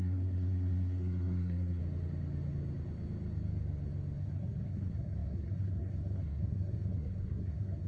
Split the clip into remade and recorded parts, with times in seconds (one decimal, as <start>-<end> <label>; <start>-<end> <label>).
0.0-1.8 remade; 1.8-4.2 recorded; 4.2-7.9 remade